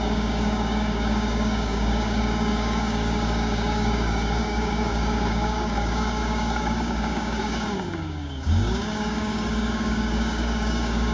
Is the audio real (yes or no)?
no